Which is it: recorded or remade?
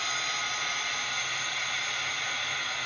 recorded